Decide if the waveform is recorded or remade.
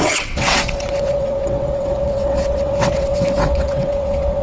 remade